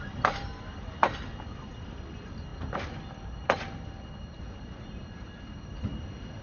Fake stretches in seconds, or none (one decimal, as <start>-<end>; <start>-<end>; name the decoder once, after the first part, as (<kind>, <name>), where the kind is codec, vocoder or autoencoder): 0.0-1.0 (vocoder, BigVGAN v2); 1.7-5.9